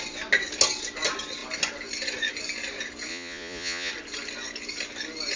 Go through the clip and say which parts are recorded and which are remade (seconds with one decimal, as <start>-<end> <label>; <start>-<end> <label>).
0.0-3.1 recorded; 3.1-3.9 remade; 3.9-5.4 recorded

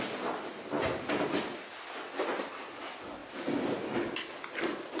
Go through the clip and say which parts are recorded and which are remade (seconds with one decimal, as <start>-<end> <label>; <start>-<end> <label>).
0.0-5.0 recorded

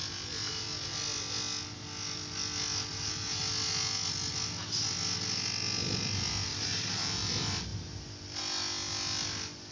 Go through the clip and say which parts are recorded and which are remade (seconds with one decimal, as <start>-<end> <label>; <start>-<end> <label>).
0.0-2.9 recorded; 2.9-3.4 remade; 3.4-6.5 recorded; 6.5-7.3 remade; 7.3-9.7 recorded

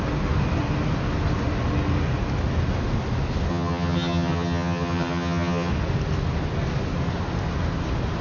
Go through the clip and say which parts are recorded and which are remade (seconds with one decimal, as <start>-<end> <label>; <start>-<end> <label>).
0.0-3.5 recorded; 3.5-5.7 remade; 5.7-8.2 recorded